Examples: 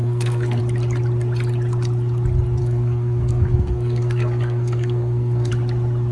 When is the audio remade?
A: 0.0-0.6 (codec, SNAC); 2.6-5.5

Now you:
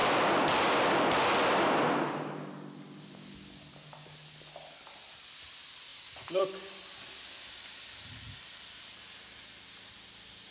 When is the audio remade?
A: 0.0-0.6 (vocoder, BigVGAN v2); 5.9-6.8

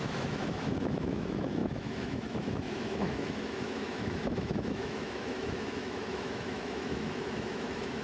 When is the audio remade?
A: 0.0-8.0 (autoencoder, DAC-VAE)